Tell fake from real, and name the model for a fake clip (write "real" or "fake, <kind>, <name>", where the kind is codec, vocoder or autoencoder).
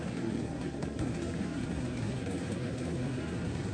fake, codec, SNAC